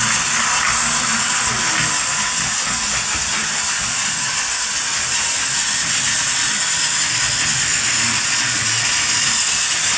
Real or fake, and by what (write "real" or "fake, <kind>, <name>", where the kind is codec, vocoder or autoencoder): real